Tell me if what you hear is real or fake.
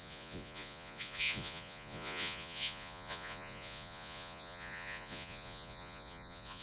fake